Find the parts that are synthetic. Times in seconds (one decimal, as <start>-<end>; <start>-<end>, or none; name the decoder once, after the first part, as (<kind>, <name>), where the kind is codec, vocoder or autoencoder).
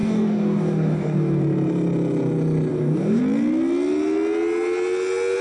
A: 0.0-1.4 (codec, DAC); 2.7-3.2